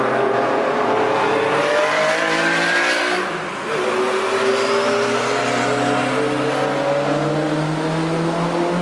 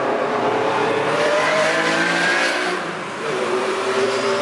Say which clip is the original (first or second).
first